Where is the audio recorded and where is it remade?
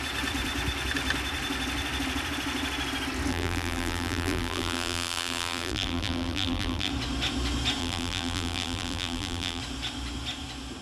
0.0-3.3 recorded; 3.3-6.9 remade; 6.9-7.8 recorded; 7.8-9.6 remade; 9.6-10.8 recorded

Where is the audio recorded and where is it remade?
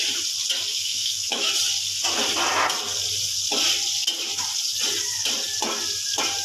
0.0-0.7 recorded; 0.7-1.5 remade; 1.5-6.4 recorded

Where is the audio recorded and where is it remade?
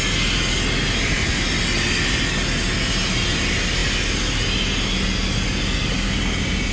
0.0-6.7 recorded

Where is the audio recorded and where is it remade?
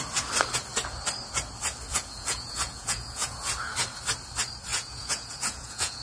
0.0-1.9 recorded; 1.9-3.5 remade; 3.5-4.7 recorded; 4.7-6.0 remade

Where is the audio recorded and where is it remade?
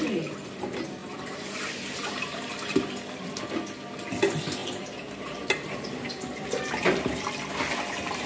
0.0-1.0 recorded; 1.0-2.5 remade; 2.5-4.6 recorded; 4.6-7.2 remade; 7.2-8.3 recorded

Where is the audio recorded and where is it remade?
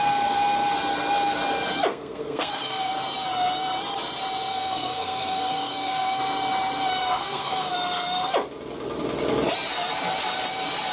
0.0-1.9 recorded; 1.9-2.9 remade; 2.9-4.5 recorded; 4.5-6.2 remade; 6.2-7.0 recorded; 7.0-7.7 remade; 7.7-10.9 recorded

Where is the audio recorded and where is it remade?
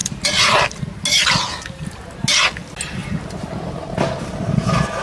0.0-0.7 remade; 0.7-5.0 recorded